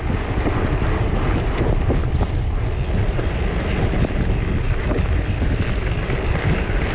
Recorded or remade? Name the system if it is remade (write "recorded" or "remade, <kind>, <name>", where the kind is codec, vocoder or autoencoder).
recorded